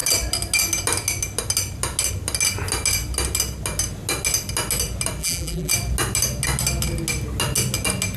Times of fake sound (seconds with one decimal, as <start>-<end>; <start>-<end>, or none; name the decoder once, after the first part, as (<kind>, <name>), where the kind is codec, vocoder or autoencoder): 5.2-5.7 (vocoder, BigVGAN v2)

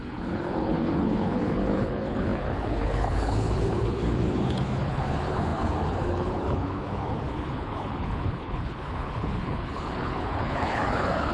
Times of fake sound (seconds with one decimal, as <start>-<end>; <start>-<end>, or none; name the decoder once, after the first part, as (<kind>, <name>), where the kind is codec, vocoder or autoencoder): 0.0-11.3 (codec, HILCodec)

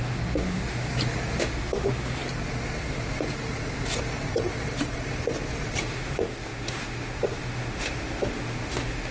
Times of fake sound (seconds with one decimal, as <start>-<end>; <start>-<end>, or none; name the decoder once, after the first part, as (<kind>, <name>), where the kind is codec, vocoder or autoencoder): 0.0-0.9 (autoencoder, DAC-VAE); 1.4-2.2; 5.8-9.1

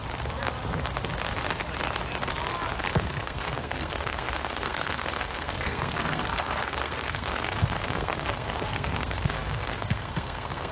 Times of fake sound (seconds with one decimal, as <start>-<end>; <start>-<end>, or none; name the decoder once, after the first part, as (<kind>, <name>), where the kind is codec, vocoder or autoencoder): 2.8-10.7 (codec, SNAC)

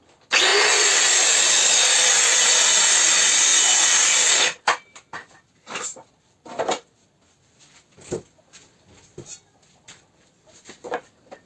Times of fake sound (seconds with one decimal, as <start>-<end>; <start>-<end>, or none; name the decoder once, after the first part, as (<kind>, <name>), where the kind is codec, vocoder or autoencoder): 5.9-10.9 (vocoder, BigVGAN v2)

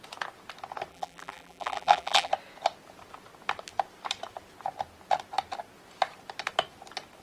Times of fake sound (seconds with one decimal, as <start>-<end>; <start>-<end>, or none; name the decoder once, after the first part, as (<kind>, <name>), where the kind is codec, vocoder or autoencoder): 0.9-2.3 (vocoder, BigVGAN v2)